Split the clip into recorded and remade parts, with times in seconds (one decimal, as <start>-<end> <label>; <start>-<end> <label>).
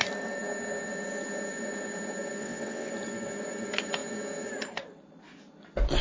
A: 0.0-2.4 recorded; 2.4-2.9 remade; 2.9-6.0 recorded